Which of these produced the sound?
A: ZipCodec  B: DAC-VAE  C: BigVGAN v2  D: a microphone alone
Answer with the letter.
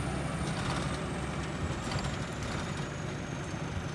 D